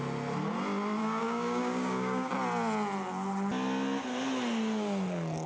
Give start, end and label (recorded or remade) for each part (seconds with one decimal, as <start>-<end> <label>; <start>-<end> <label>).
0.0-1.0 recorded; 1.0-2.3 remade; 2.3-5.5 recorded